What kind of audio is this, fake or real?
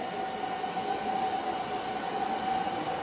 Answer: real